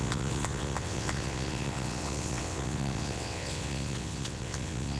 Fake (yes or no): yes